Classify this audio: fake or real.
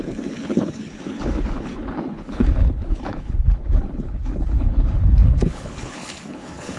fake